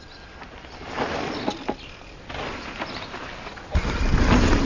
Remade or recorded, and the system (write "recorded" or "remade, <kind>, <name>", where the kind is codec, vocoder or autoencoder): recorded